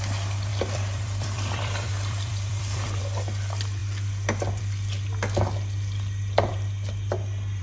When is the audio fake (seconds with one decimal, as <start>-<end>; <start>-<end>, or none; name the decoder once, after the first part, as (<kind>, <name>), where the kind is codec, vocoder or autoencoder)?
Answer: 0.5-3.0 (vocoder, BigVGAN v2)